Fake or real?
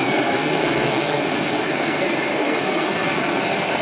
fake